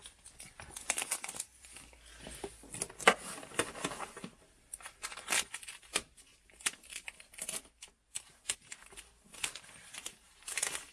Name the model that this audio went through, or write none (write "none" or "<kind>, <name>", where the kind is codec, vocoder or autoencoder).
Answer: none